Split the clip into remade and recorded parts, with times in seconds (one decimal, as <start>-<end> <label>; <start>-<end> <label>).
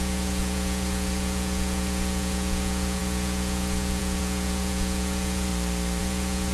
0.0-5.5 remade; 5.5-6.0 recorded; 6.0-6.5 remade